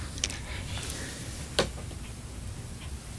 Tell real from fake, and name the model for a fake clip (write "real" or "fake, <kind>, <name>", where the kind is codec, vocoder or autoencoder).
real